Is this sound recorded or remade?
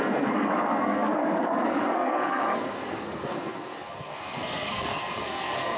remade